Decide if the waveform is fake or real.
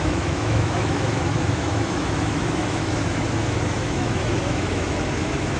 fake